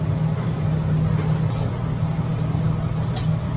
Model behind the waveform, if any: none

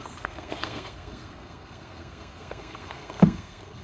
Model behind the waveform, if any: codec, SNAC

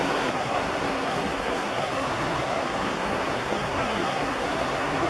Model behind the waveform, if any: codec, SNAC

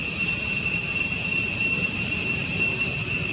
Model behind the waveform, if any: vocoder, BigVGAN v2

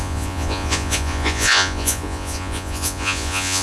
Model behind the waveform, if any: vocoder, Vocos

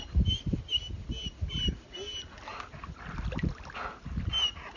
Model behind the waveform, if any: none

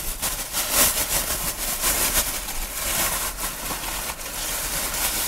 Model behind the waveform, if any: none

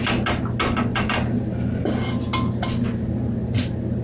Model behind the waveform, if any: none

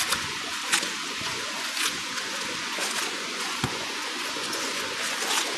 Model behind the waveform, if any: vocoder, Vocos